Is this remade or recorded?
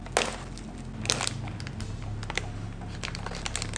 recorded